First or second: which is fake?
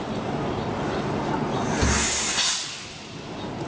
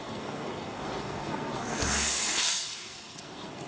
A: second